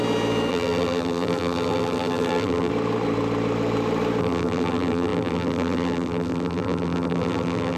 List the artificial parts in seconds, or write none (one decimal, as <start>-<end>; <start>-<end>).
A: 0.5-2.7; 4.2-7.8